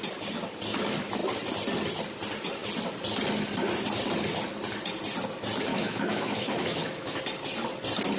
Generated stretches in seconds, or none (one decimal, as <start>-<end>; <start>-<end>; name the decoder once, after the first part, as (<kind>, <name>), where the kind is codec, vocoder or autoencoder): 5.7-7.2 (autoencoder, DAC-VAE)